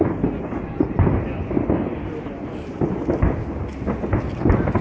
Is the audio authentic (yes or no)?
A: yes